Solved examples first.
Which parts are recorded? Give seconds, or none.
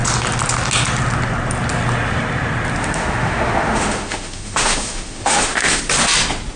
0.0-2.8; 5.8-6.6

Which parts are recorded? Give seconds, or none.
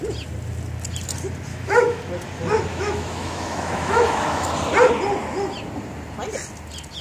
0.0-1.5; 2.0-2.7; 4.5-7.0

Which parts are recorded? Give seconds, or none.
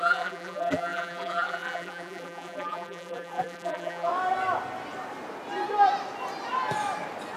4.1-7.4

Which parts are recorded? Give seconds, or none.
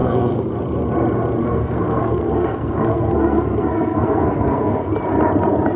0.5-1.4; 4.9-5.8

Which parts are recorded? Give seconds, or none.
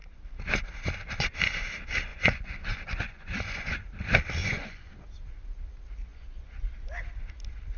0.0-2.1; 3.7-4.4; 4.9-6.1; 6.6-7.8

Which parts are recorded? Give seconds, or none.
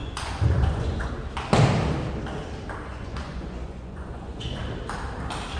1.1-2.9; 4.6-5.6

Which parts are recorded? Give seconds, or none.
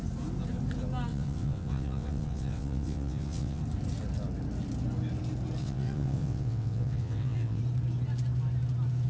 0.0-1.1; 3.6-5.6; 7.6-9.1